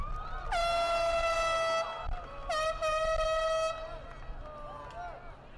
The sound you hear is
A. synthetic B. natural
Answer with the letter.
B